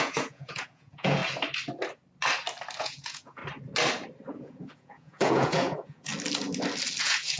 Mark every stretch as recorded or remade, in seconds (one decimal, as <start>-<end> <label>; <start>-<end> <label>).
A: 0.0-1.2 remade; 1.2-2.8 recorded; 2.8-3.4 remade; 3.4-4.3 recorded; 4.3-6.1 remade; 6.1-7.0 recorded; 7.0-7.4 remade